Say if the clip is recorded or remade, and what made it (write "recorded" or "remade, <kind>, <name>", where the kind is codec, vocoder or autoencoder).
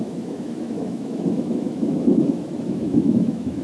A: remade, autoencoder, DAC-VAE